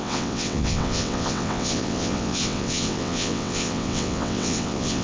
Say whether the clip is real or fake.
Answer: fake